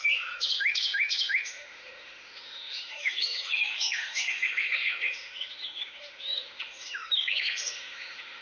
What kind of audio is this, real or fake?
fake